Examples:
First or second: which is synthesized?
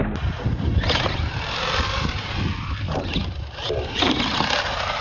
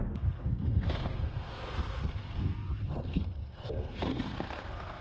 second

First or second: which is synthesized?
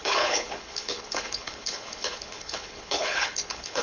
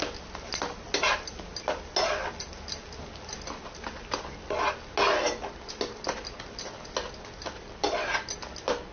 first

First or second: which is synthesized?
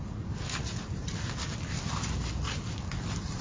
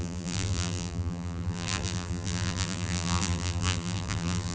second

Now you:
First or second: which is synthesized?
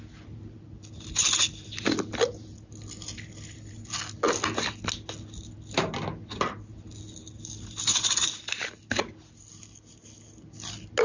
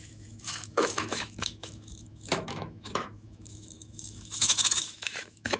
second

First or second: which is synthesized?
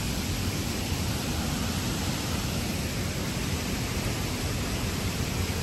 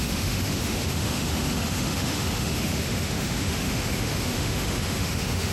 second